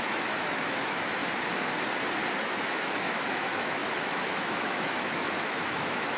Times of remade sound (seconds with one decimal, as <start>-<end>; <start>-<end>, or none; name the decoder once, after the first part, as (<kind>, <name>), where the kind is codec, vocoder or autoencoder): 0.0-1.2 (autoencoder, DAC-VAE); 2.4-6.2